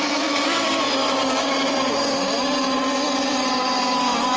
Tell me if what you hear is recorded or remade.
recorded